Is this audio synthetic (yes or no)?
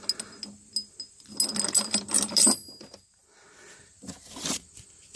no